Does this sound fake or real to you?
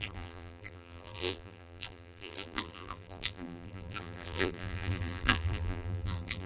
fake